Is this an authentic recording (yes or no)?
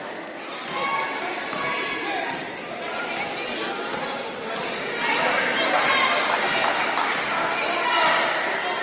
yes